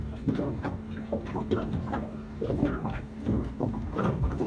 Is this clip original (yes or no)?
no